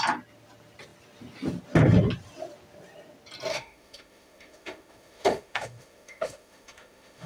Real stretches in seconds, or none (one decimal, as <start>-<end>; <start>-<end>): 0.0-3.5